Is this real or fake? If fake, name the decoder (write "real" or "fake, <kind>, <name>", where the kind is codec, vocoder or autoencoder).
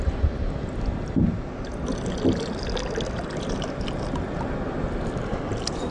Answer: real